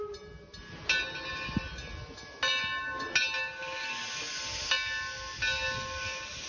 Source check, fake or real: real